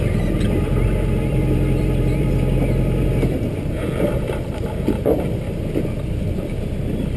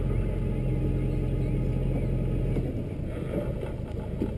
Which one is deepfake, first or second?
first